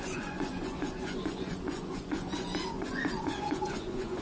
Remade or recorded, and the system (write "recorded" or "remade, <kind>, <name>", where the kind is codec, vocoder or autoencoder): remade, vocoder, Vocos